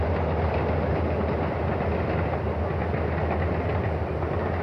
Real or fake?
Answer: real